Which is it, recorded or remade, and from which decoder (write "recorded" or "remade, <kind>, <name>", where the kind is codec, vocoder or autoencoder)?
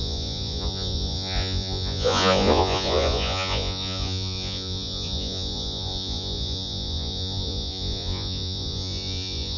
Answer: remade, vocoder, Vocos